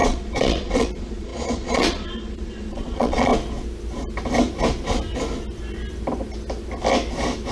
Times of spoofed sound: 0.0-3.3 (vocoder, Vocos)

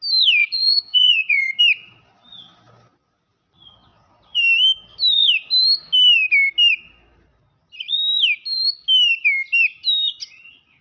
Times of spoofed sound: 0.4-1.6 (vocoder, Vocos)